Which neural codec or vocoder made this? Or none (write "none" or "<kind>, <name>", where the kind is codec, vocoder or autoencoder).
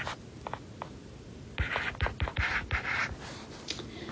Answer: none